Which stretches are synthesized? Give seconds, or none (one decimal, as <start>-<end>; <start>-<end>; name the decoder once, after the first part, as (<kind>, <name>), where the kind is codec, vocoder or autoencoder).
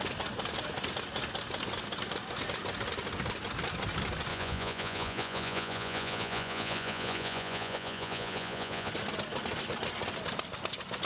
4.3-8.9 (vocoder, Vocos)